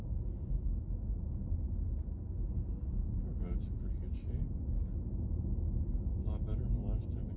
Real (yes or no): yes